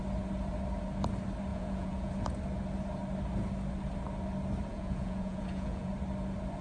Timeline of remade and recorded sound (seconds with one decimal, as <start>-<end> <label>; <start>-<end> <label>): 0.0-1.5 recorded; 1.5-2.1 remade; 2.1-4.7 recorded; 4.7-5.9 remade; 5.9-6.6 recorded